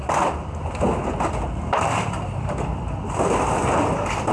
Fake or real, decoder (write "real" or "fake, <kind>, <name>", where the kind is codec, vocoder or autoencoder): real